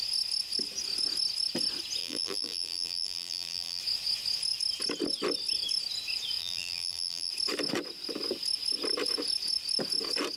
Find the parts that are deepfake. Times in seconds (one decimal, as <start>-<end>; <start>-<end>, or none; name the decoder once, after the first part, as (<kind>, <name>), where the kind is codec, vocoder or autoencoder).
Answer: 2.0-3.8 (vocoder, BigVGAN v2); 6.4-7.3